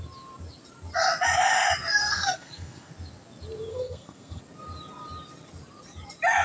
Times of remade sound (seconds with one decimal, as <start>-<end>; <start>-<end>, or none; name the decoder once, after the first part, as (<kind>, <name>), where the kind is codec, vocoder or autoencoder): 2.0-2.9 (codec, SNAC); 3.7-4.4